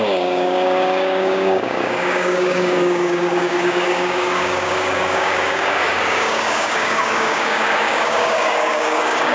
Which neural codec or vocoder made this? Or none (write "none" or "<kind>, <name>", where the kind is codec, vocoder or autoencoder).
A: codec, DAC